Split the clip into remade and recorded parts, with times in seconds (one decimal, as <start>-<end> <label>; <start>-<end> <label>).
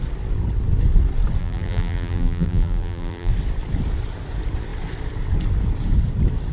0.0-1.4 recorded; 1.4-3.3 remade; 3.3-6.5 recorded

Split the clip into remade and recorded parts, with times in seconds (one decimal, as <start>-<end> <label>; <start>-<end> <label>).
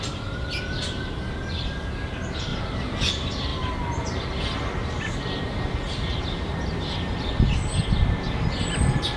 0.0-3.5 recorded; 3.5-7.4 remade; 7.4-9.2 recorded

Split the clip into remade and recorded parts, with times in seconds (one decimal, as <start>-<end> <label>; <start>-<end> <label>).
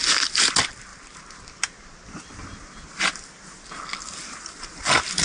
0.0-5.2 recorded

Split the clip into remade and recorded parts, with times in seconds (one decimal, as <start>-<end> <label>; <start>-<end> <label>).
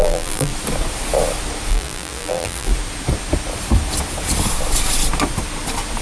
0.0-0.5 remade; 0.5-1.7 recorded; 1.7-2.7 remade; 2.7-6.0 recorded